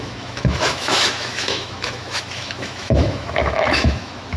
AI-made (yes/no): yes